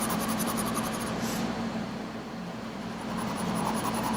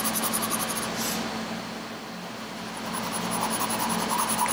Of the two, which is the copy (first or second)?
first